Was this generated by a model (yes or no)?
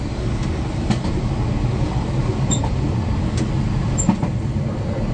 no